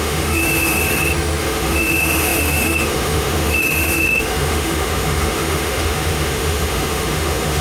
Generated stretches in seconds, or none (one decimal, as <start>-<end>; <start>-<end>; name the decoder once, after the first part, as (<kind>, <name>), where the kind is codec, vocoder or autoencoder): 0.0-0.8 (autoencoder, DAC-VAE); 1.4-7.6